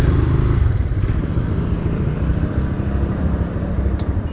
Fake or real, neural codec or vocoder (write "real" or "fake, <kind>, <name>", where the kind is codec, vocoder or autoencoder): fake, vocoder, BigVGAN v2